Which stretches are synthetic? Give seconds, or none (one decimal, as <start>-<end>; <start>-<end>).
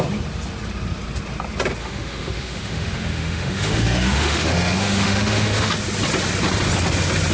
1.8-5.7